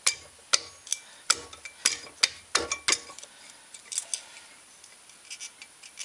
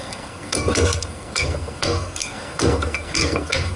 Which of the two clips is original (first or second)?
first